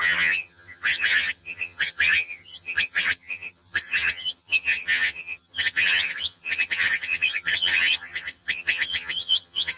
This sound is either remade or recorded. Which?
remade